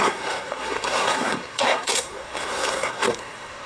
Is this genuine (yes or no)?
no